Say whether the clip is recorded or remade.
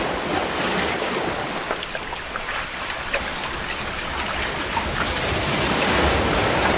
recorded